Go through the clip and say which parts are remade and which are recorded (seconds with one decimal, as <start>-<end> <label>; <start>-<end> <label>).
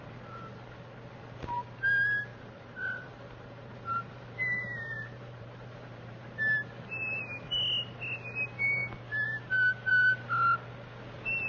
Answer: 0.0-2.3 recorded; 2.3-7.2 remade; 7.2-8.8 recorded; 8.8-9.5 remade; 9.5-11.5 recorded